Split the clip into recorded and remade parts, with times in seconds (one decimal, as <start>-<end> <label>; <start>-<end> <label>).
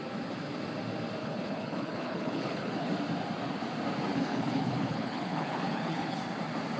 0.0-1.2 recorded; 1.2-2.9 remade; 2.9-4.1 recorded; 4.1-6.2 remade; 6.2-6.8 recorded